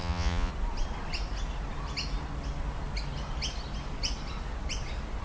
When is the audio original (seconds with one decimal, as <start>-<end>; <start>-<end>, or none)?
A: 0.5-5.2